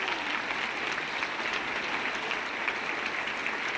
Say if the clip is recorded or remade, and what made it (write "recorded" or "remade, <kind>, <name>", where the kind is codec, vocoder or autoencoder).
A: recorded